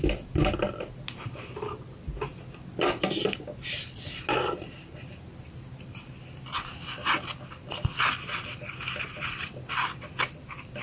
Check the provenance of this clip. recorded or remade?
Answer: recorded